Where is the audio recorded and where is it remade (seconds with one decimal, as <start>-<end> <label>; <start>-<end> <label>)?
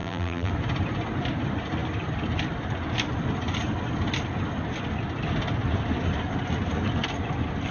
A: 0.0-0.5 remade; 0.5-7.7 recorded